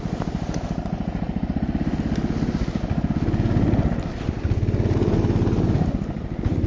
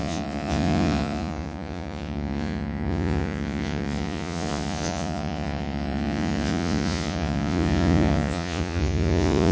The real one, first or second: first